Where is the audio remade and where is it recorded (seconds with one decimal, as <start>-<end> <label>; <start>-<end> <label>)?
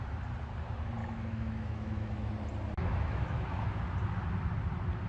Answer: 0.0-1.0 recorded; 1.0-2.3 remade; 2.3-2.8 recorded; 2.8-3.7 remade; 3.7-5.1 recorded